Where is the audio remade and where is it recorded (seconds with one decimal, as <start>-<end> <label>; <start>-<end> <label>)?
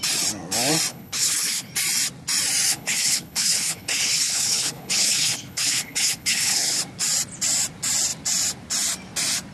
0.0-0.9 recorded; 0.9-1.7 remade; 1.7-2.7 recorded; 2.7-6.8 remade; 6.8-9.5 recorded